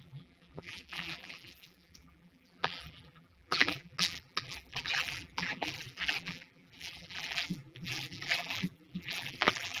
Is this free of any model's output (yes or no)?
no